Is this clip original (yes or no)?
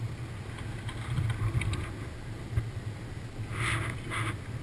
yes